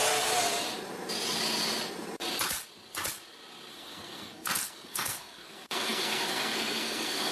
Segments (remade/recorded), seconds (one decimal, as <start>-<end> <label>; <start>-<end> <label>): 0.0-3.7 recorded; 3.7-7.3 remade